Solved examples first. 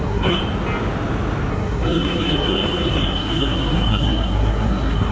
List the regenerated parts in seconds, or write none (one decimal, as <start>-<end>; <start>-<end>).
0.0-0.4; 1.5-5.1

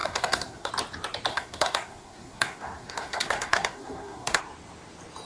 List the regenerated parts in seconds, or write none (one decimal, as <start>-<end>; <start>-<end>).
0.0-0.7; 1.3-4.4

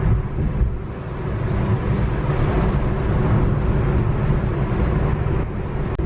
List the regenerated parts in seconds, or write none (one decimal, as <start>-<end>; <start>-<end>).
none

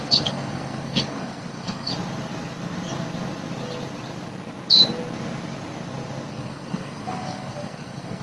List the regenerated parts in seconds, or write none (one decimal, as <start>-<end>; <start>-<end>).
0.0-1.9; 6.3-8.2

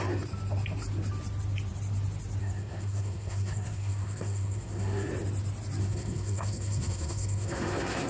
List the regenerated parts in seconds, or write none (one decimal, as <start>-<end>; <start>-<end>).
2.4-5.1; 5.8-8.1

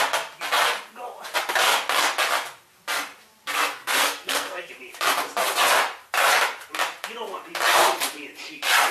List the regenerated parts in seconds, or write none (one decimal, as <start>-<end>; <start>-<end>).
3.4-4.7